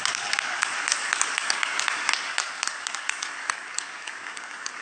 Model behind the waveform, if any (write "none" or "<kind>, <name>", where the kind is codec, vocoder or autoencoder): codec, DAC